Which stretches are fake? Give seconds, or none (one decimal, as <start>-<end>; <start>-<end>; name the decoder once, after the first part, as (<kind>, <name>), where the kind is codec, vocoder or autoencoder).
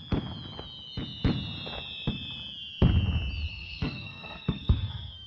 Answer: 3.5-5.3 (codec, SNAC)